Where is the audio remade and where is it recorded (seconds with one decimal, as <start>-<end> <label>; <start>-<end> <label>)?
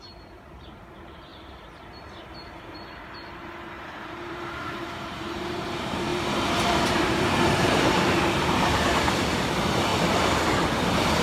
0.0-1.3 remade; 1.3-4.1 recorded; 4.1-9.9 remade; 9.9-11.2 recorded